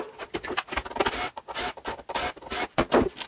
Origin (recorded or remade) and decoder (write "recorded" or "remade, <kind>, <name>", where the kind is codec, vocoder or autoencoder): recorded